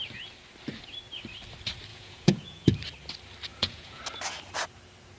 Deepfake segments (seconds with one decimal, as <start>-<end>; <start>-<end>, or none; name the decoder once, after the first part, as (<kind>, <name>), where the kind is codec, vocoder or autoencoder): 1.9-2.7 (vocoder, Vocos); 3.5-4.0